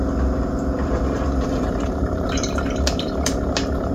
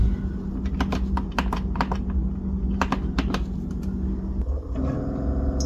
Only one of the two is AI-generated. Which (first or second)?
first